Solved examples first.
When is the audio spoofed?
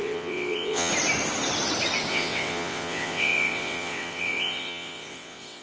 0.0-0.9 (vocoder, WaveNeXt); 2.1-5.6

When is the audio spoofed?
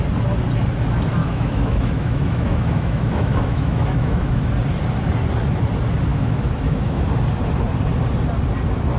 1.2-4.5 (autoencoder, DAC-VAE); 6.1-7.1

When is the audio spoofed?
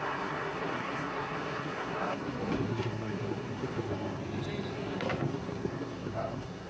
0.0-4.2 (codec, SNAC); 4.7-6.7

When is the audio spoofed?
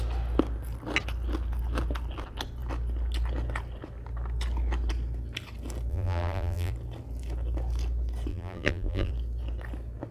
5.9-6.7 (vocoder, BigVGAN v2); 8.3-9.1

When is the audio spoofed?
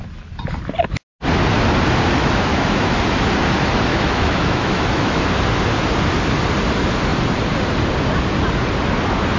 2.2-3.0 (autoencoder, DAC-VAE); 3.9-5.2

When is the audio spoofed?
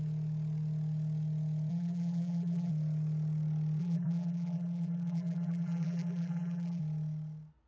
1.7-2.7 (vocoder, BigVGAN v2); 3.8-6.8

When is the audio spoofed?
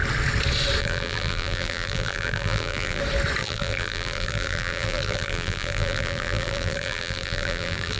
0.8-3.0 (vocoder, BigVGAN v2); 3.4-8.0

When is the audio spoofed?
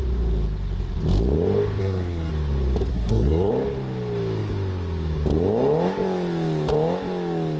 1.8-2.3 (codec, SNAC); 2.9-3.5